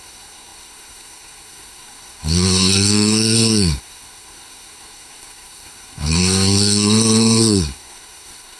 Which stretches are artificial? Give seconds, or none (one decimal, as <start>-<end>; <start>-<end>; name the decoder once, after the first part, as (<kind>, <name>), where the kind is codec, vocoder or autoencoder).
0.0-8.6 (codec, SNAC)